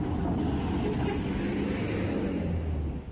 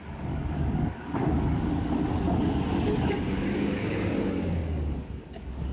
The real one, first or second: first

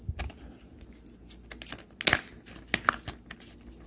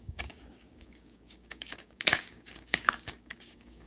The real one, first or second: first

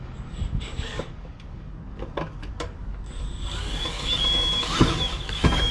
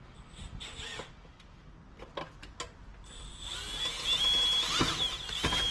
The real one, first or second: second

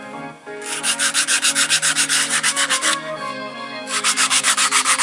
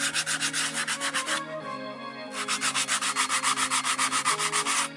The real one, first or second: second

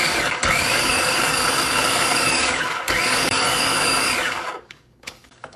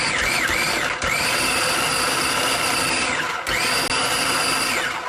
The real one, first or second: second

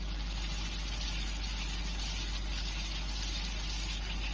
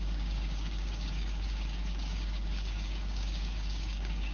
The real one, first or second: first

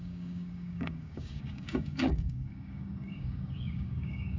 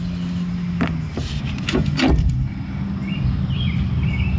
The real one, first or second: second